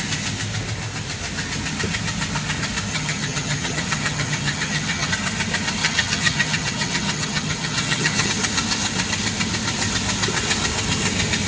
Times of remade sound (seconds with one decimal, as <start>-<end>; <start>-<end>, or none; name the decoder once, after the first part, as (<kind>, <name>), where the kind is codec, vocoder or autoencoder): 2.9-5.1 (vocoder, HiFi-GAN); 5.8-8.3